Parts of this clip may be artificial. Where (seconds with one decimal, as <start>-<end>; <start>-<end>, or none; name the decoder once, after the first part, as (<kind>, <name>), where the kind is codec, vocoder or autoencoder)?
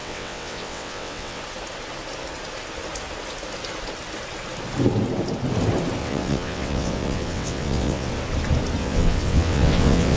0.0-1.4 (vocoder, WaveNeXt); 6.0-8.1; 8.8-10.2